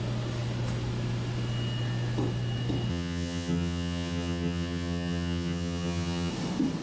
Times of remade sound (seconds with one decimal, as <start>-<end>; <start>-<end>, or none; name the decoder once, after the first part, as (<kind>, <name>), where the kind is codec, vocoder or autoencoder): 2.9-6.3 (vocoder, HiFi-GAN)